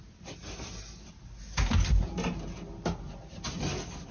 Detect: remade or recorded recorded